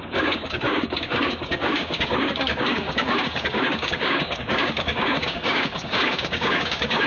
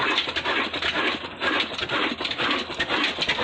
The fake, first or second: first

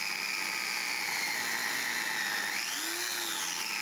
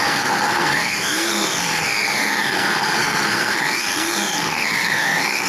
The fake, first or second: second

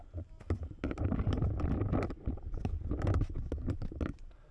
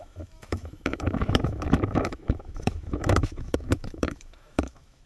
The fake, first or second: second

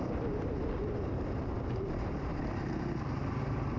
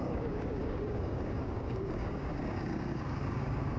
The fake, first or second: second